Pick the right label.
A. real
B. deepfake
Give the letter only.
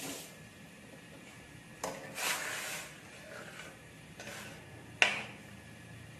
A